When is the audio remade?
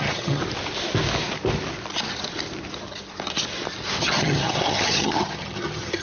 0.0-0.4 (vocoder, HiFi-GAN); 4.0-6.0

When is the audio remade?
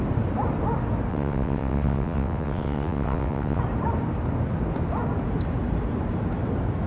1.1-3.6 (vocoder, WaveNeXt)